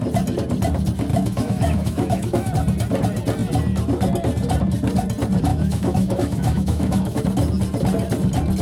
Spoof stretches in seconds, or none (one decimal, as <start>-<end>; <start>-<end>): 1.1-2.5; 5.5-7.2